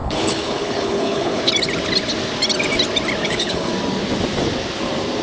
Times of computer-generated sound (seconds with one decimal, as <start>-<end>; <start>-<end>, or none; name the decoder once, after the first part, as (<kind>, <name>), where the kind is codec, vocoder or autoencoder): 0.0-1.5 (codec, HILCodec); 3.2-3.7